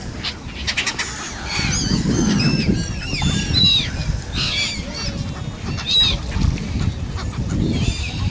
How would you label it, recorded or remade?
recorded